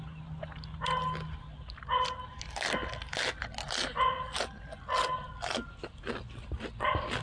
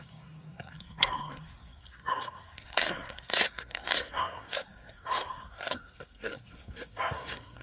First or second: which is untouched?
first